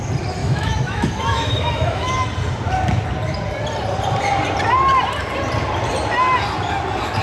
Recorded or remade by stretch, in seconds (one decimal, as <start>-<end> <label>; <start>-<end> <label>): 0.0-0.4 recorded; 0.4-2.1 remade; 2.1-7.2 recorded